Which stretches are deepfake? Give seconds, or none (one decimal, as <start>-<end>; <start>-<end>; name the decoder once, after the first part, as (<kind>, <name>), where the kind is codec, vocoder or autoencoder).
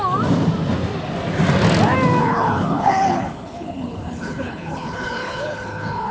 2.2-6.1 (codec, HILCodec)